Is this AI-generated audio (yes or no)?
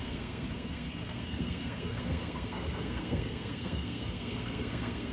yes